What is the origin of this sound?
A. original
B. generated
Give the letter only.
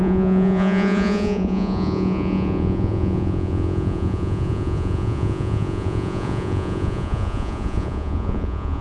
B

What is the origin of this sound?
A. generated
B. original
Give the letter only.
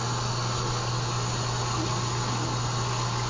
B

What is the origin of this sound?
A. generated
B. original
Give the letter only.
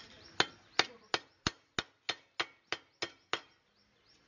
B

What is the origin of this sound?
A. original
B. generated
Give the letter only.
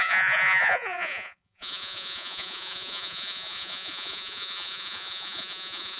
B